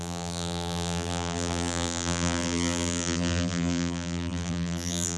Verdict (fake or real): fake